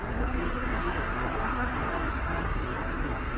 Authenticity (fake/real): fake